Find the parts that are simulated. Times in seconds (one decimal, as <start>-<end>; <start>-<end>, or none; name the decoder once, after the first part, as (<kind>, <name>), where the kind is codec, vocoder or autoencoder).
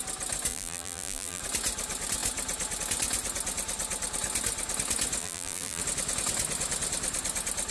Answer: 0.5-1.4 (vocoder, BigVGAN v2); 5.2-5.8